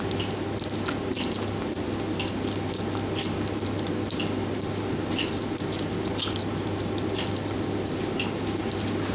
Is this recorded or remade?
recorded